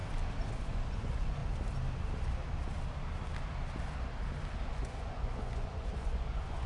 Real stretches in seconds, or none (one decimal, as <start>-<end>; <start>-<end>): 0.0-0.5; 1.4-4.7